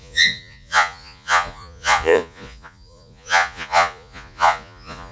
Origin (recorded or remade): remade